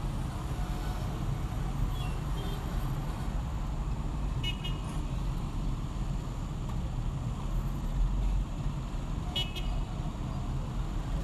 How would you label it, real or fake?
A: real